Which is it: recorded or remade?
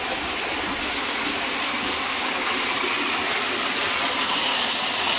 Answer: recorded